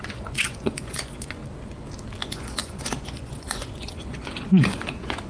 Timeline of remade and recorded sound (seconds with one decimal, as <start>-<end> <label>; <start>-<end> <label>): 0.0-1.4 remade; 1.4-2.2 recorded; 2.2-5.3 remade